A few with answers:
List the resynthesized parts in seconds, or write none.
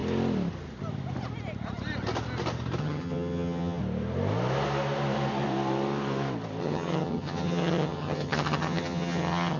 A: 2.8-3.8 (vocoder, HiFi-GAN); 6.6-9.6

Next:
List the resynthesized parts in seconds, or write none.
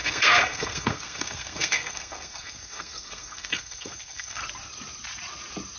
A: 0.0-4.4 (codec, SNAC)